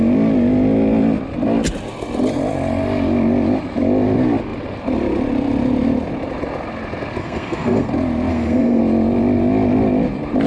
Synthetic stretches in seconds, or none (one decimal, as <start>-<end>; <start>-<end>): 7.2-7.9; 8.3-8.8